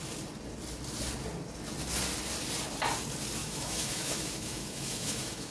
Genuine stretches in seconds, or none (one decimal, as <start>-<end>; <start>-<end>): 0.0-3.4